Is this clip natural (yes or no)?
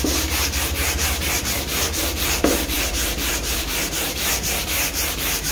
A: no